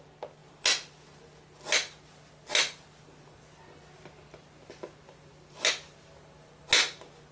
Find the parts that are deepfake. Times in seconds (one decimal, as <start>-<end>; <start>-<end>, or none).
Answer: none